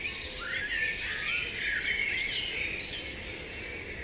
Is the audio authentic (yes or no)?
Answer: yes